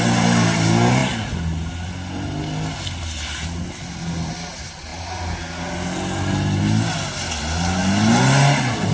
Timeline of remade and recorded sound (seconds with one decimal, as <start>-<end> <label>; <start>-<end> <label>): 0.0-8.9 recorded